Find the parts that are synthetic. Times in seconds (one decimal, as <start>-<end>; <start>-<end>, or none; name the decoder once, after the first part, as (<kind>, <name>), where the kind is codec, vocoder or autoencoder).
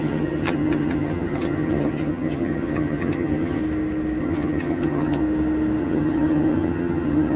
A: 0.0-3.6 (vocoder, HiFi-GAN); 4.2-5.2; 5.8-7.4